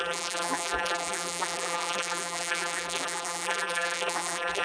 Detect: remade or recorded remade